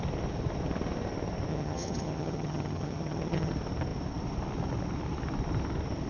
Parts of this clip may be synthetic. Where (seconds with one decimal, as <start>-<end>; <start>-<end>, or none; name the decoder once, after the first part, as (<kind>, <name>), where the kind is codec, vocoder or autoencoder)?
1.5-3.5 (vocoder, HiFi-GAN)